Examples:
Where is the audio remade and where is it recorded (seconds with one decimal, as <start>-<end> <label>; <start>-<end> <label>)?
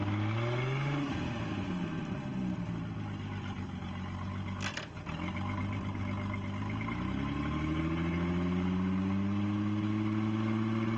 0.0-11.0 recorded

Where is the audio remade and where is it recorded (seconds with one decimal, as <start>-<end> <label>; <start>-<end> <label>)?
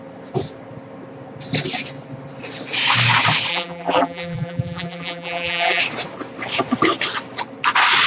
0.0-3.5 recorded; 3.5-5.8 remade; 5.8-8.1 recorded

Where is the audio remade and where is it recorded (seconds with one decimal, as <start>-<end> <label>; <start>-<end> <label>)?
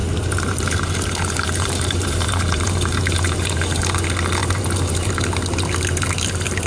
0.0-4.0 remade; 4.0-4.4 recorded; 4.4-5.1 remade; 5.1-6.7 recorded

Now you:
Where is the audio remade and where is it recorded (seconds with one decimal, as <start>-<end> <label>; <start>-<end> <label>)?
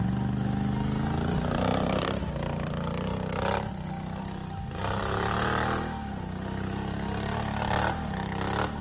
0.0-1.7 recorded; 1.7-3.7 remade; 3.7-8.8 recorded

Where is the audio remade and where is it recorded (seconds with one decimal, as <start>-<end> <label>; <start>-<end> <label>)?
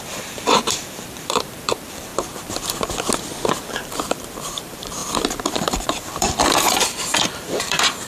0.0-2.1 remade; 2.1-3.7 recorded; 3.7-8.1 remade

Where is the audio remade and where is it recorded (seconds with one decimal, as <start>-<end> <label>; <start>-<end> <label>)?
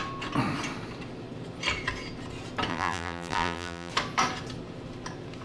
0.0-2.7 recorded; 2.7-3.9 remade; 3.9-5.4 recorded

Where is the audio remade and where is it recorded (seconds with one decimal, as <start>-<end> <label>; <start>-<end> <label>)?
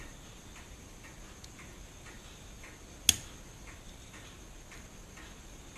0.0-5.8 recorded